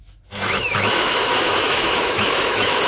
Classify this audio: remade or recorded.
remade